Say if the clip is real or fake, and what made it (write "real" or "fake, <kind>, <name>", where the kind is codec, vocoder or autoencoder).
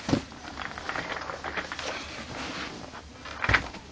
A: real